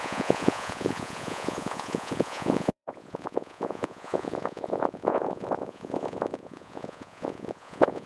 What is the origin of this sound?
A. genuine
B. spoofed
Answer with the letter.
B